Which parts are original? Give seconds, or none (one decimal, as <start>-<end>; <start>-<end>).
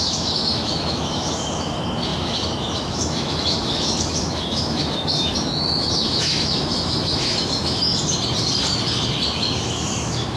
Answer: 7.9-9.6